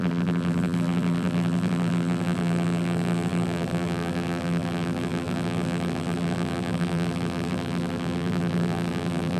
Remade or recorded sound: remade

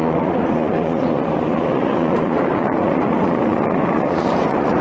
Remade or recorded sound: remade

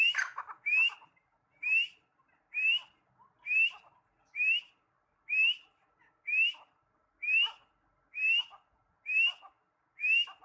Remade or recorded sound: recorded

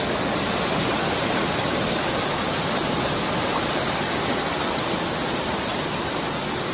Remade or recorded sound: recorded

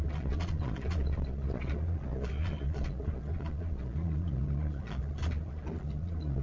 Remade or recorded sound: remade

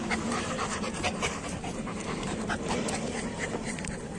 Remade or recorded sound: remade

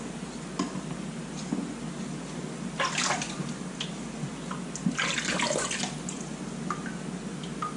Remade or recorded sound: recorded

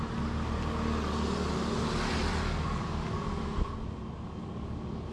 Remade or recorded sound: recorded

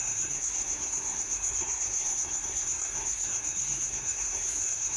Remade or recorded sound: remade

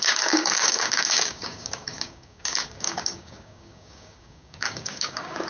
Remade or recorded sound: remade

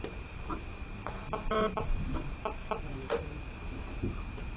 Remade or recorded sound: remade